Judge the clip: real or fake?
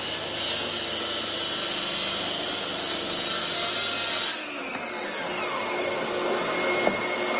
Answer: real